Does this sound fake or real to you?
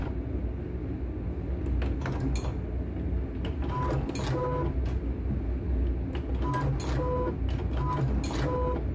real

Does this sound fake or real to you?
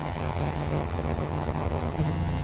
fake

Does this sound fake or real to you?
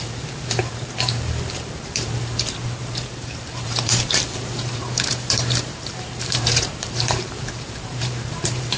fake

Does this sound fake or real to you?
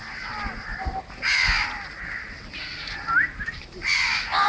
real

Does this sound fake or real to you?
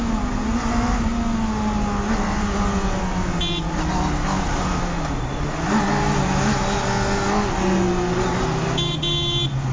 real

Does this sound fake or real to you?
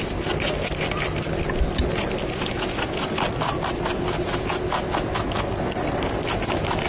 real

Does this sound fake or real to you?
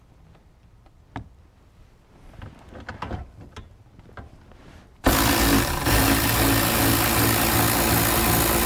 real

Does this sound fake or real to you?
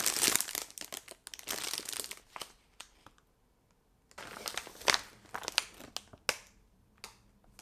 real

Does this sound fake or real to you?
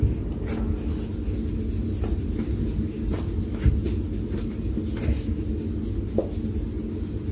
real